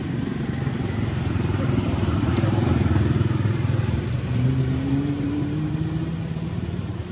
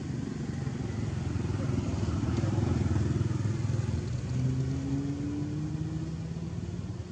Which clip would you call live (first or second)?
second